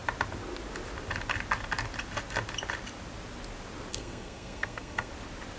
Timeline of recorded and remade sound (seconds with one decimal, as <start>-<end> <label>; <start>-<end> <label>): 0.0-3.9 recorded; 3.9-5.1 remade; 5.1-5.6 recorded